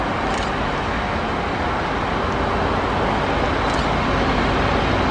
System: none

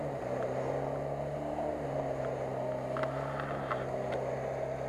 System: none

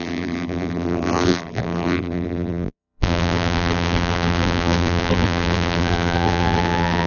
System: vocoder, BigVGAN v2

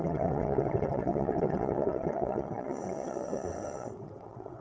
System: vocoder, WaveNeXt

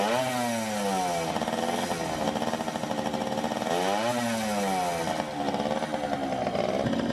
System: none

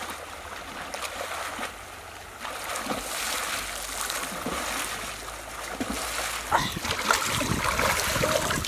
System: none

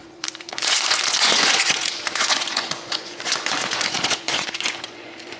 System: vocoder, Vocos